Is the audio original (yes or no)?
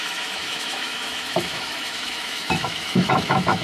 no